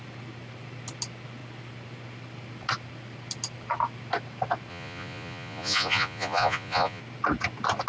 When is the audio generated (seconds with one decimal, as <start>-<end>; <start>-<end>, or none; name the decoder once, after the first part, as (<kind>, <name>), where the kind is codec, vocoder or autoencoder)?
4.7-7.0 (vocoder, Vocos)